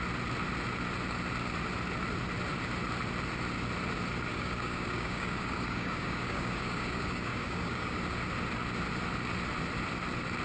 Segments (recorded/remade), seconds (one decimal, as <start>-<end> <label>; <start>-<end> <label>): 0.0-4.3 recorded; 4.3-8.0 remade; 8.0-10.4 recorded